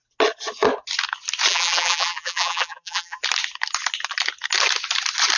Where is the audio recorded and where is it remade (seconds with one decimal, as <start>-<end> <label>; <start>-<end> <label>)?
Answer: 0.0-1.5 recorded; 1.5-3.2 remade; 3.2-5.4 recorded